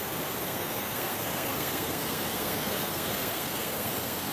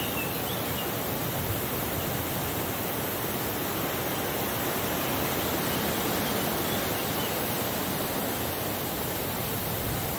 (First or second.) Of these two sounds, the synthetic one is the first